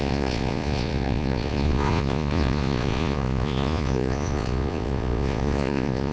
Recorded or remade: remade